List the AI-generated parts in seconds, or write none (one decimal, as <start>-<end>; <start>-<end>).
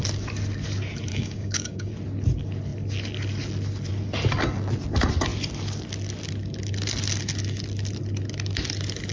1.1-1.9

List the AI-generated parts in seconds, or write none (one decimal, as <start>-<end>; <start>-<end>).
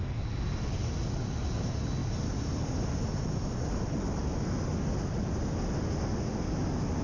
none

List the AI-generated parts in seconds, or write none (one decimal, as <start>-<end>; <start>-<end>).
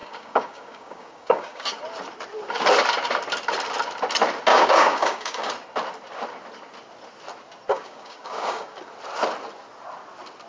0.0-1.8; 4.5-5.5; 7.7-8.8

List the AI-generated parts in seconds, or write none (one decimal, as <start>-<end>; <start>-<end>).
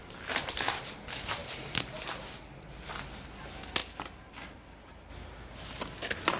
none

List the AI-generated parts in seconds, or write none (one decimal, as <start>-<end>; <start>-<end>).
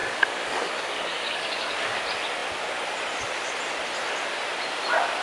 0.0-2.0